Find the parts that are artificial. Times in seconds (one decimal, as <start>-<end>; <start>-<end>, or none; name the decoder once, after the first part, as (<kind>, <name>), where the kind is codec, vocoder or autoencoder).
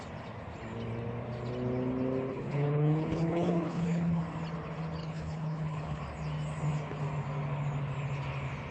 2.3-4.2 (codec, HILCodec); 5.0-6.0